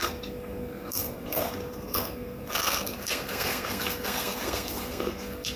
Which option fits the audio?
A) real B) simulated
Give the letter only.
B